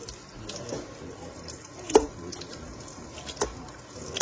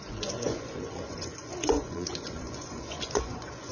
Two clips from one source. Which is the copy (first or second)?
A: second